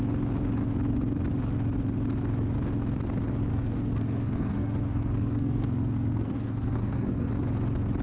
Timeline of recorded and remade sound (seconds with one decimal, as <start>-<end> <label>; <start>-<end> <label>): 0.0-3.5 recorded; 3.5-7.3 remade; 7.3-8.0 recorded